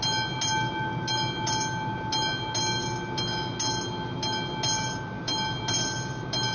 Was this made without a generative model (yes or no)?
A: yes